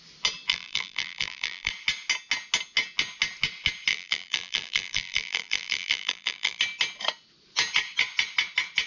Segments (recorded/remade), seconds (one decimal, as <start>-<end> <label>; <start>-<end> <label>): 0.0-0.5 recorded; 0.5-1.7 remade; 1.7-3.9 recorded; 3.9-6.6 remade; 6.6-8.9 recorded